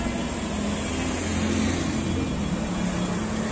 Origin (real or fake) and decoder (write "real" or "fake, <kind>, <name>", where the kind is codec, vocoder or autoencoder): real